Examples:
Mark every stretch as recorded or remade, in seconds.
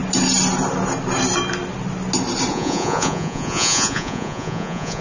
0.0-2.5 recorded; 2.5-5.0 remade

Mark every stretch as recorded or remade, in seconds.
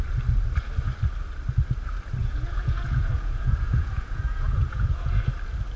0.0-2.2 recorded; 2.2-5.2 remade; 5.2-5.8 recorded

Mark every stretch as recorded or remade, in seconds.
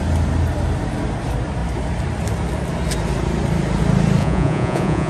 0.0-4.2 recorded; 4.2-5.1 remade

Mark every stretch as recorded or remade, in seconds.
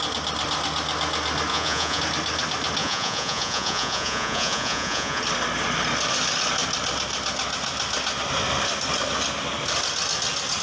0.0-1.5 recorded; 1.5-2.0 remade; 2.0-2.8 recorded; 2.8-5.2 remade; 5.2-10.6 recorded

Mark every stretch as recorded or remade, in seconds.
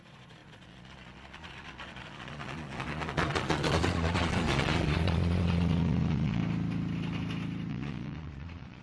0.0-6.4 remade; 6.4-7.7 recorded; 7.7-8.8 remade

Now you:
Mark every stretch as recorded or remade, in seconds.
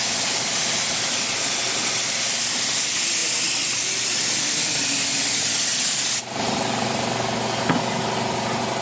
0.0-8.8 recorded